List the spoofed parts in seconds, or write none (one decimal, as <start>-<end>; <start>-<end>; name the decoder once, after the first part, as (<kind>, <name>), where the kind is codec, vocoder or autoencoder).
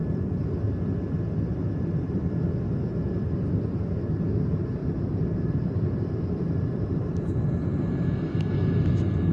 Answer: 4.8-8.3 (vocoder, BigVGAN v2)